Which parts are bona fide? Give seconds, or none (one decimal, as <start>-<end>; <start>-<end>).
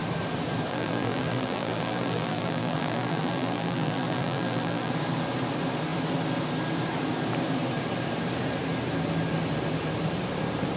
0.0-0.7; 4.9-10.8